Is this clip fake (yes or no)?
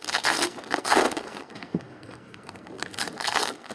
yes